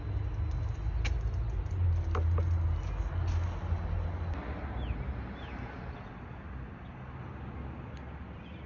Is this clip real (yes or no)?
yes